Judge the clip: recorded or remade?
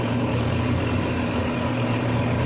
remade